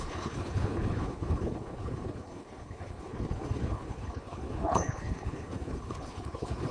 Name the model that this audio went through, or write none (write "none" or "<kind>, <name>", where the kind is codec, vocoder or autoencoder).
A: codec, HILCodec